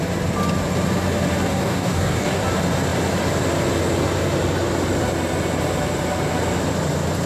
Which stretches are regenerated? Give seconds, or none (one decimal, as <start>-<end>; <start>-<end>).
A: 1.6-2.4